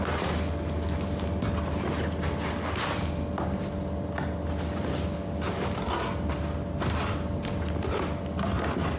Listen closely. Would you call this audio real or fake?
real